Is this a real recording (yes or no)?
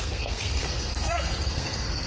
no